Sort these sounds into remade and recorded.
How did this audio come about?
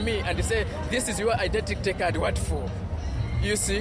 recorded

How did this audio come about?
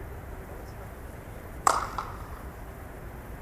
remade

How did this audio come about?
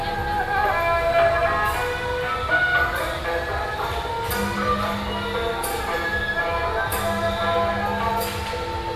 recorded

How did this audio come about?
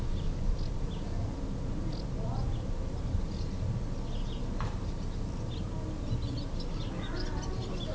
recorded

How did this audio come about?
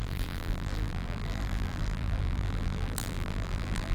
remade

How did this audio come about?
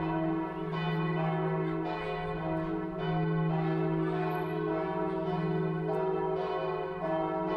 recorded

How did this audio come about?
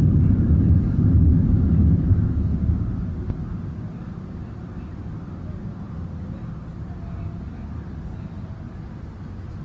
recorded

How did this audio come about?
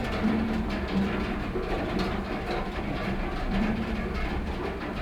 remade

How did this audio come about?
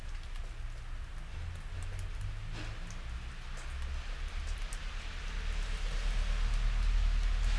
recorded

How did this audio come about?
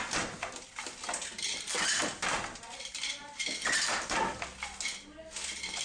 recorded